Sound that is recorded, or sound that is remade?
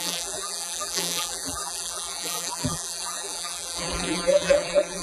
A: remade